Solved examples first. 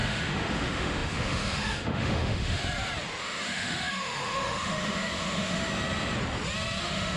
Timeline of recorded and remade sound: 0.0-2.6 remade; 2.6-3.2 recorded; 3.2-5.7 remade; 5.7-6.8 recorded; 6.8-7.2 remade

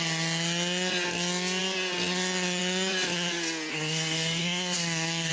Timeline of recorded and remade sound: 0.0-3.7 recorded; 3.7-5.3 remade

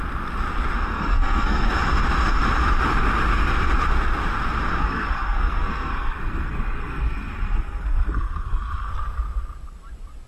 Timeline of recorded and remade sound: 0.0-0.9 recorded; 0.9-1.7 remade; 1.7-4.8 recorded; 4.8-8.9 remade; 8.9-10.3 recorded

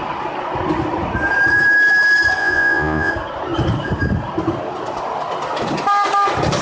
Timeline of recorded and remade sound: 0.0-2.4 recorded; 2.4-3.1 remade; 3.1-6.6 recorded

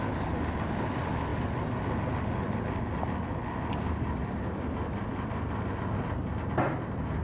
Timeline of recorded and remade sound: 0.0-1.3 remade; 1.3-4.1 recorded; 4.1-7.2 remade